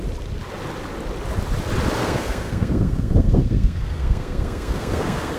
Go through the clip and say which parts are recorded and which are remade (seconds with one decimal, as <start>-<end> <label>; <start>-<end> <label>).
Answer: 0.0-2.0 recorded; 2.0-5.4 remade